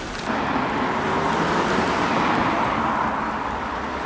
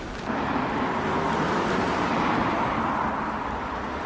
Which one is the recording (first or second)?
first